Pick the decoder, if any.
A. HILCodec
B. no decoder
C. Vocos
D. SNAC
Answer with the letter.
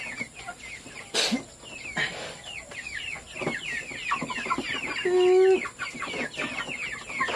B